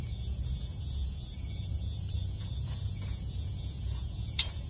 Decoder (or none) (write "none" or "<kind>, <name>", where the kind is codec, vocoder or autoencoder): vocoder, Vocos